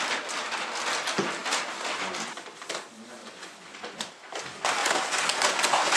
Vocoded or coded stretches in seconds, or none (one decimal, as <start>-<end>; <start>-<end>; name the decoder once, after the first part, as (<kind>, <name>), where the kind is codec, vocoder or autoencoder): 3.2-4.1 (vocoder, Vocos); 4.8-6.0